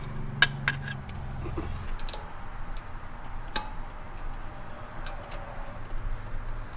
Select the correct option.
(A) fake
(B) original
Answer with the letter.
B